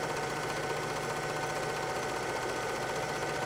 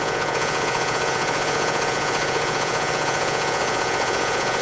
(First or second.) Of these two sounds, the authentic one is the first